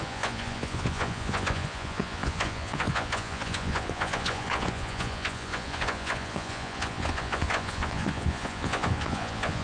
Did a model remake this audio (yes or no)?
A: yes